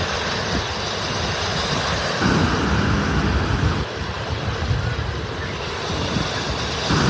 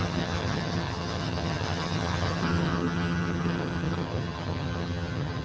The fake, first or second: second